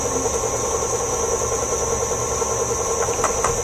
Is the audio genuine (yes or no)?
yes